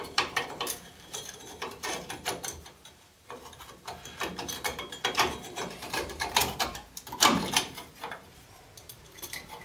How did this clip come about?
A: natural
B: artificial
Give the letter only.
B